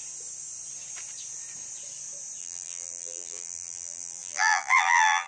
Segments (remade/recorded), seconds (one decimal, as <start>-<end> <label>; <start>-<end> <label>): 0.0-2.4 recorded; 2.4-5.3 remade